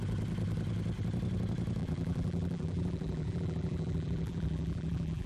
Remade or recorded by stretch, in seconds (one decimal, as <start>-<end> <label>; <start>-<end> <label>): 0.0-1.8 recorded; 1.8-5.3 remade